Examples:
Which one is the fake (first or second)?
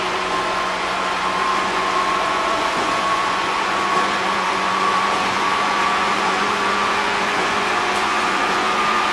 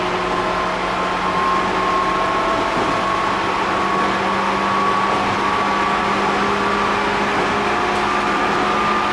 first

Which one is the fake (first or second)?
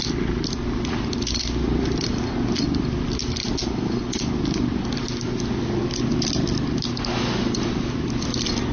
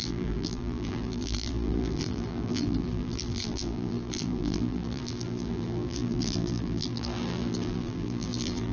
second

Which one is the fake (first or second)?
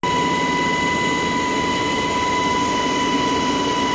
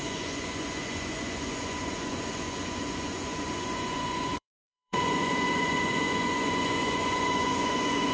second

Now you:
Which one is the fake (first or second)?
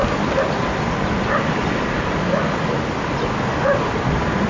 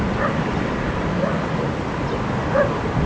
second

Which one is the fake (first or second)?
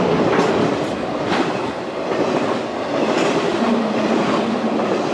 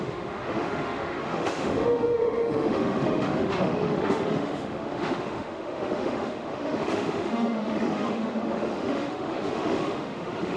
second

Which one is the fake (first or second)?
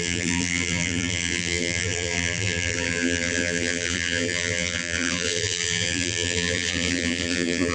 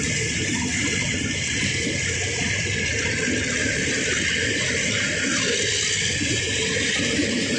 first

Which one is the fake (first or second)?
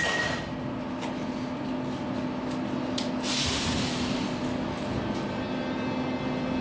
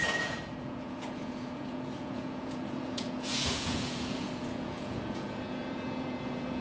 second